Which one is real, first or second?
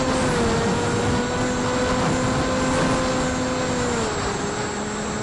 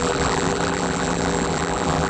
first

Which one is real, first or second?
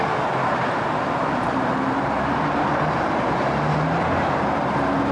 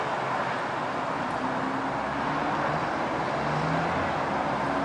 second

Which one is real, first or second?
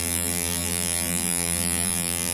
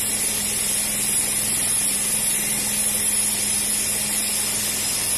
second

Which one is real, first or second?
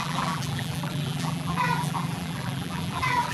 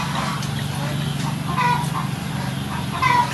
second